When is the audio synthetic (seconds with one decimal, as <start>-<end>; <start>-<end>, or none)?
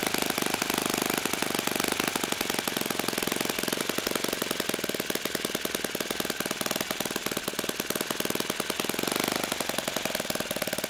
none